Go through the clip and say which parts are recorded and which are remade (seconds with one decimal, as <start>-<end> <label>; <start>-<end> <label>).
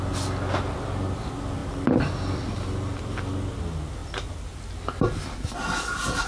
0.0-6.3 recorded